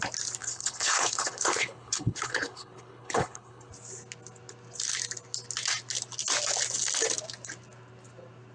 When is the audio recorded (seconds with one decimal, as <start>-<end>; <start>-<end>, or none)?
0.0-0.4; 3.7-8.5